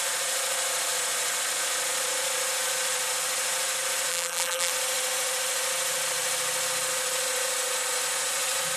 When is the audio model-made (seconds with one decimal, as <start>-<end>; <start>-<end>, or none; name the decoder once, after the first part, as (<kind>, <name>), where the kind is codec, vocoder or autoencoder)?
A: 4.1-4.7 (vocoder, BigVGAN v2)